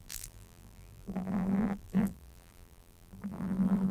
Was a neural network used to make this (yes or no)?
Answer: yes